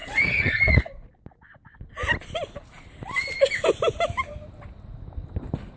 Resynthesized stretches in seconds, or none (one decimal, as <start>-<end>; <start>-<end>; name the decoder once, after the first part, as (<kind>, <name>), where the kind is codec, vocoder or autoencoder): 0.0-1.1 (vocoder, Vocos)